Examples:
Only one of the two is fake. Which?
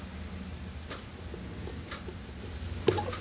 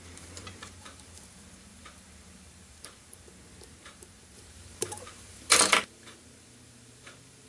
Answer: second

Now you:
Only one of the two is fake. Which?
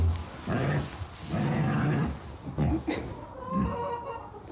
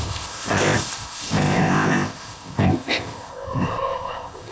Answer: second